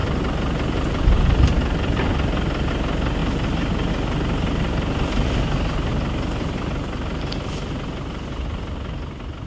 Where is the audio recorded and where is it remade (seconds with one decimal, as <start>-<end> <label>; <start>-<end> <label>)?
0.0-5.9 recorded; 5.9-7.2 remade; 7.2-9.5 recorded